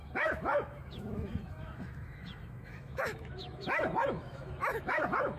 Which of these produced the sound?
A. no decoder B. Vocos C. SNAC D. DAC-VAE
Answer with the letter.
D